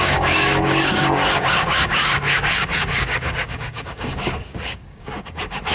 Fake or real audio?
fake